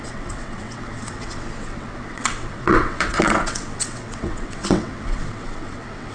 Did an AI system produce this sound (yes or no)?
yes